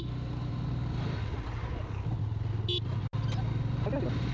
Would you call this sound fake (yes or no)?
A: no